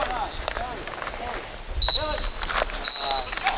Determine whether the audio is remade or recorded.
recorded